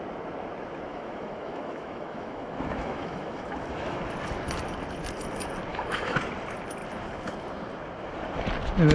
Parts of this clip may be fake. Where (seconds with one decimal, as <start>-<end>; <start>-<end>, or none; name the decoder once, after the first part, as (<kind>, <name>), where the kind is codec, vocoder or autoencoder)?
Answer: 0.9-4.0 (autoencoder, DAC-VAE); 5.7-6.2